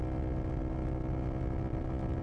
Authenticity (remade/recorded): recorded